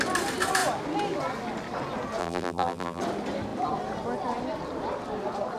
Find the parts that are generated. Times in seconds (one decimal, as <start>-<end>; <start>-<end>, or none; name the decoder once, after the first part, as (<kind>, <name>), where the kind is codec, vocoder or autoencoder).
2.2-3.0 (vocoder, BigVGAN v2)